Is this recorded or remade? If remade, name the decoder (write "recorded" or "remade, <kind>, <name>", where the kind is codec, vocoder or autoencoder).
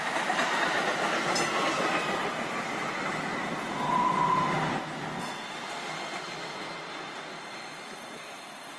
recorded